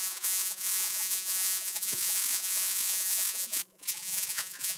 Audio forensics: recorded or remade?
remade